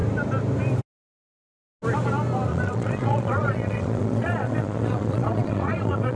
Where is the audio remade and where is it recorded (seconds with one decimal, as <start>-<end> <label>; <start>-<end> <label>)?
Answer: 0.0-2.5 recorded; 2.5-6.2 remade

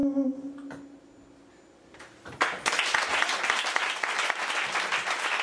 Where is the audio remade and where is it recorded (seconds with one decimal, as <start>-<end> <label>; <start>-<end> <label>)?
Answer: 0.0-5.4 recorded

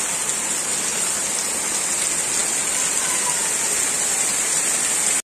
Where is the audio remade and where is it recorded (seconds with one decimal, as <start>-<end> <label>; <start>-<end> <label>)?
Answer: 0.0-5.2 recorded

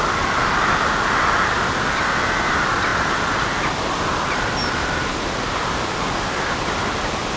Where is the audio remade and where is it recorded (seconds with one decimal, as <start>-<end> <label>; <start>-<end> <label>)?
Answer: 0.0-7.4 recorded

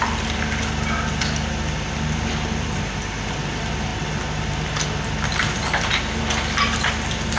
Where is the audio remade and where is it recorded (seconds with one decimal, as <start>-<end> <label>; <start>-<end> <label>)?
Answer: 0.0-7.4 recorded

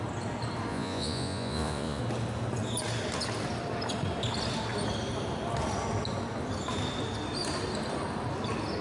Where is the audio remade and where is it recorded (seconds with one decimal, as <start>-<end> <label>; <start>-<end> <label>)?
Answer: 0.0-0.7 recorded; 0.7-2.0 remade; 2.0-8.8 recorded

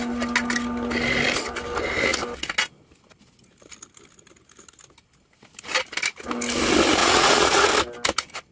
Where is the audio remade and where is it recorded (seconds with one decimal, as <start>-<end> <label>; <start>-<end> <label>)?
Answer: 0.0-7.0 recorded; 7.0-7.7 remade; 7.7-8.5 recorded

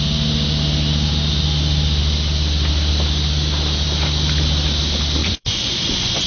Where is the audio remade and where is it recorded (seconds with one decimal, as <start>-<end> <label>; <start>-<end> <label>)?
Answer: 0.0-5.2 recorded; 5.2-6.3 remade